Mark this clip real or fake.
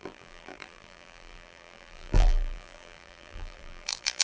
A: fake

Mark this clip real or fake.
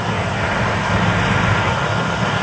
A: real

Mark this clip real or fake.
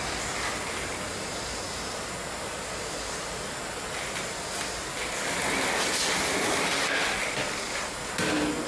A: real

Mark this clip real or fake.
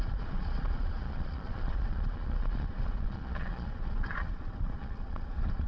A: fake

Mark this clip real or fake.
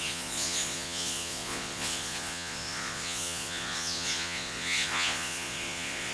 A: fake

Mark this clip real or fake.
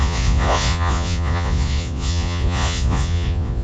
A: fake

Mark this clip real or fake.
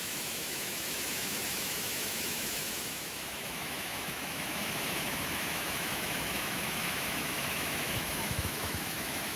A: fake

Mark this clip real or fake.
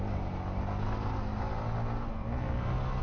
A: real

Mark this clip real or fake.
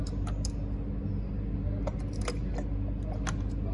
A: real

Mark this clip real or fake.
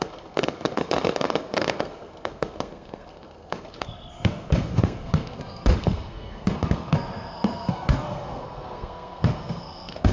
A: fake